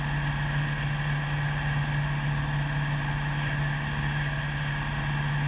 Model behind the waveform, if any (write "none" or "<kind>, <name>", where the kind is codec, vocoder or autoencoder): none